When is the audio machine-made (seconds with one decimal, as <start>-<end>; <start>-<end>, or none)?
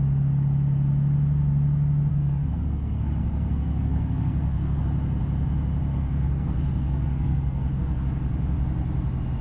2.1-4.8; 5.9-8.0